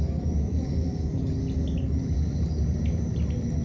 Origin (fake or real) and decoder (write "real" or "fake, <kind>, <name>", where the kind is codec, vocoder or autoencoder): real